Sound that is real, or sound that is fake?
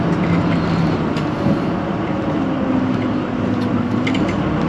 real